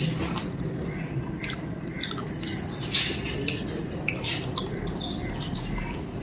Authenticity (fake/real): real